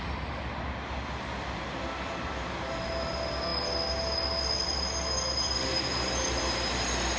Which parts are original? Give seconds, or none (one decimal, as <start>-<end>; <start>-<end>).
0.0-7.2